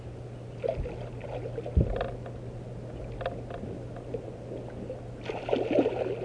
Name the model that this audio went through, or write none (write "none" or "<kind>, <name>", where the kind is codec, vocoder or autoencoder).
none